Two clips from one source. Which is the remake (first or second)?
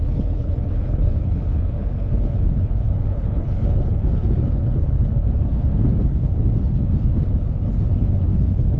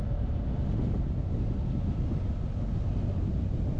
first